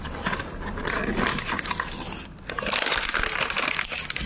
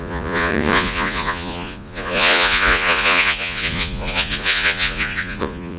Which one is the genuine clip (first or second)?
first